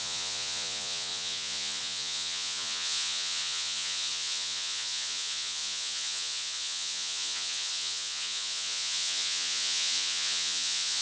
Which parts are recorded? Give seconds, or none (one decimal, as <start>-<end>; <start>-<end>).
none